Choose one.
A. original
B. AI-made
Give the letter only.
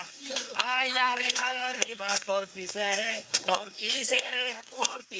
B